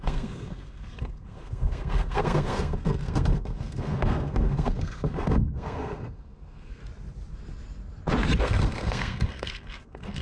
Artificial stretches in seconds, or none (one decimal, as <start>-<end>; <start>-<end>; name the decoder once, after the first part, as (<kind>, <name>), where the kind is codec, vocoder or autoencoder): 0.0-6.8 (codec, SNAC); 8.4-10.2